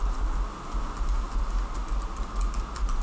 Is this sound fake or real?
real